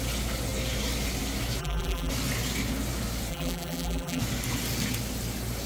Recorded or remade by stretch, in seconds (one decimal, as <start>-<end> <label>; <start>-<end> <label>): 0.0-1.6 recorded; 1.6-2.1 remade; 2.1-3.3 recorded; 3.3-4.2 remade; 4.2-5.7 recorded